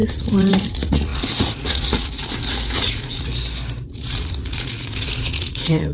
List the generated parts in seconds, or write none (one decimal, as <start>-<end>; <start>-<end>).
0.0-3.3; 3.9-5.9